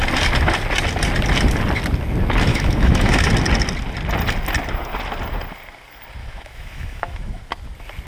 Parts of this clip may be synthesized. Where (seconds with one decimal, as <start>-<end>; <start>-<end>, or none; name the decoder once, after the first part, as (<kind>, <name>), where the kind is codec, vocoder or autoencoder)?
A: 2.5-3.3 (autoencoder, DAC-VAE); 6.2-7.4